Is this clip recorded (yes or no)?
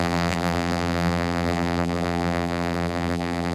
no